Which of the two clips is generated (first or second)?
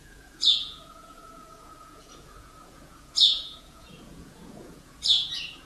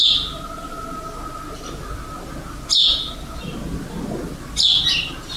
first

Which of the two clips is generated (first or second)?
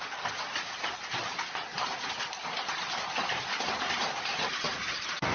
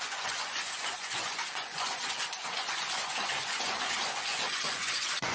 second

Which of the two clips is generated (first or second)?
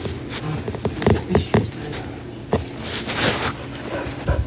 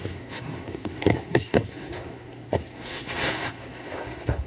second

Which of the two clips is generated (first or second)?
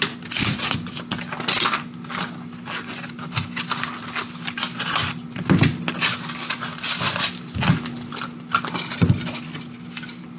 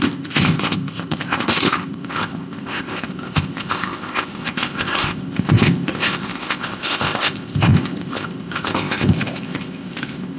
second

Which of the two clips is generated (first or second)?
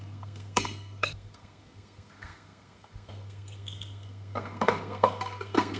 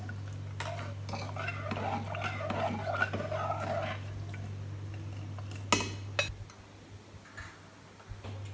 first